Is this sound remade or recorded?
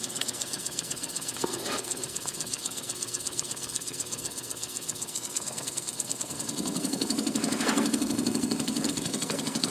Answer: remade